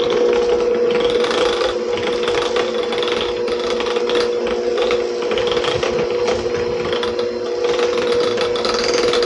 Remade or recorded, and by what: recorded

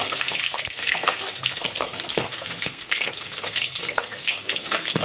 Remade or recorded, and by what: remade, codec, SNAC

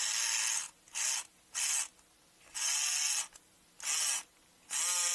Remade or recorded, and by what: recorded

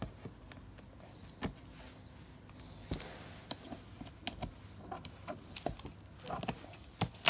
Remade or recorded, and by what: recorded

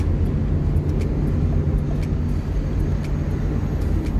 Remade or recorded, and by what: recorded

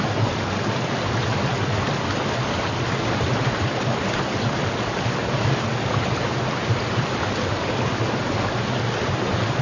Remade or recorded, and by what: recorded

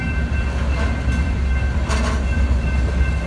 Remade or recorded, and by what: recorded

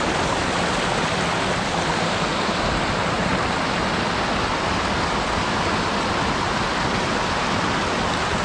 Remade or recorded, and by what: recorded